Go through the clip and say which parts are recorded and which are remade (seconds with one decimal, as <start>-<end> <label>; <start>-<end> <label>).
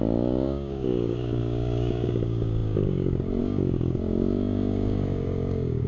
0.0-5.9 remade